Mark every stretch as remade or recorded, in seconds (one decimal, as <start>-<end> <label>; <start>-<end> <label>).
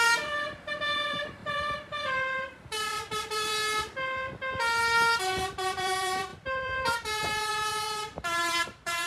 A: 0.0-3.5 remade; 3.5-5.2 recorded; 5.2-9.1 remade